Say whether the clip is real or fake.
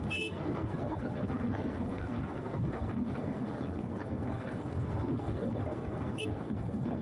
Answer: fake